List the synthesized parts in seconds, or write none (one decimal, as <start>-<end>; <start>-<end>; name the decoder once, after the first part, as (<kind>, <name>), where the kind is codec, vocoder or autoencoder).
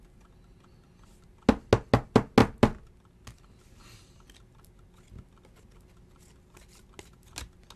none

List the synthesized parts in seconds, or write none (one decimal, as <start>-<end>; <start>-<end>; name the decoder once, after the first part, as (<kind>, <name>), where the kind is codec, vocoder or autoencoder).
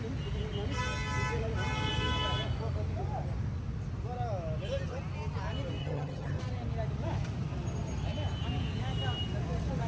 5.8-6.4 (vocoder, HiFi-GAN)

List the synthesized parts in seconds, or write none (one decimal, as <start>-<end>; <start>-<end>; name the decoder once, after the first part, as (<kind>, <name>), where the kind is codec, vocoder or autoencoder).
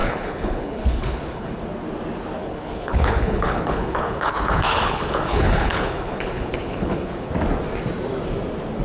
0.0-1.5 (codec, HILCodec); 2.4-7.3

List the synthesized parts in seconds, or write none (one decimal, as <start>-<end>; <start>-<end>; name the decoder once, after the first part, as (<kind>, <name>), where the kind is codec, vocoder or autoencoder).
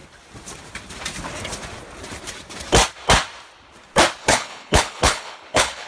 4.2-5.9 (codec, HILCodec)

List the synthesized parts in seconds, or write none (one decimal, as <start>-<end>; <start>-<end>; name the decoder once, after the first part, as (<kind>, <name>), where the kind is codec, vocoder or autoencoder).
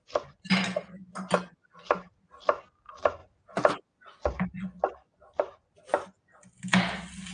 none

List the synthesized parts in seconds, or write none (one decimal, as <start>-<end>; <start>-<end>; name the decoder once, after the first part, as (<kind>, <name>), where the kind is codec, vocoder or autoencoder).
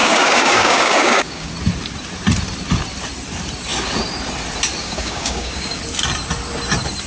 0.0-1.5 (codec, DAC); 4.8-5.8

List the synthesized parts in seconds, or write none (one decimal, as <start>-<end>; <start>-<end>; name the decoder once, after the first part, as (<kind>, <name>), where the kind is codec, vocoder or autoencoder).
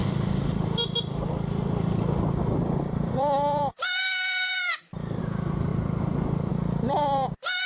2.8-7.7 (vocoder, BigVGAN v2)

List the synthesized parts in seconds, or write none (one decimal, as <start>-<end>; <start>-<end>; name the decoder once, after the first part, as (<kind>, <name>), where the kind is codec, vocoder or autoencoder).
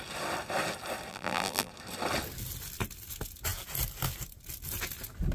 1.1-1.7 (vocoder, BigVGAN v2)